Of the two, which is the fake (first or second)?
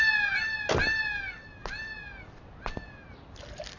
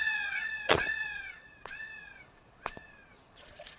second